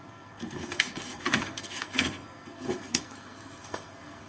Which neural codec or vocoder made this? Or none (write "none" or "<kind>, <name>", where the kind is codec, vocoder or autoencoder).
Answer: codec, SNAC